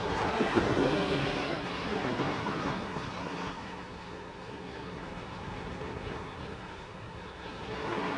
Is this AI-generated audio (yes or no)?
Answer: yes